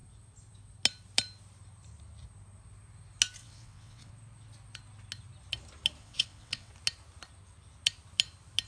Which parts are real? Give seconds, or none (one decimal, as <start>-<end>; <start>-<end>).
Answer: 0.0-3.4; 4.1-6.0; 6.7-8.7